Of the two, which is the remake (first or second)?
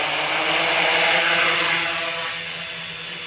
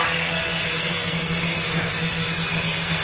second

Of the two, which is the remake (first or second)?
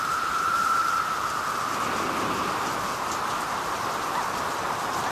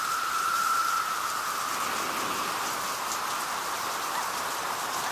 first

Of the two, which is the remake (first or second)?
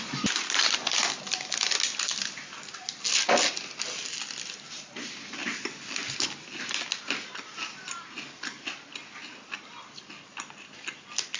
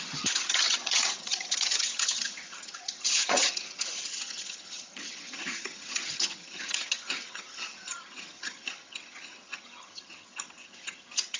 second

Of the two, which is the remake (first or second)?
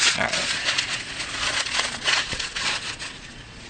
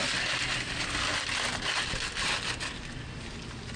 first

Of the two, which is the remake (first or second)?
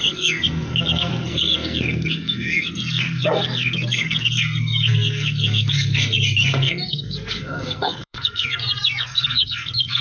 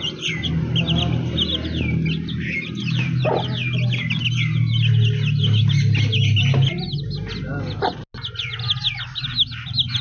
first